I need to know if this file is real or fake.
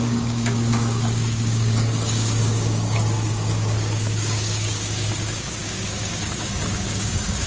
fake